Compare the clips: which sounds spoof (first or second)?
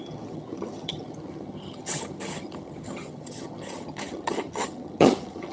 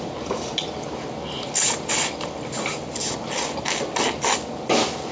first